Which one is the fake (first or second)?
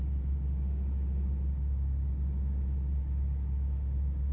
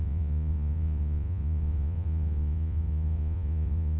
second